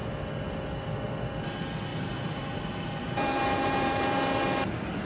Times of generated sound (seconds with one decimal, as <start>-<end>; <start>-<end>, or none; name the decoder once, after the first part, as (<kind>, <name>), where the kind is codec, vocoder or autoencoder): 1.9-4.2 (vocoder, BigVGAN v2)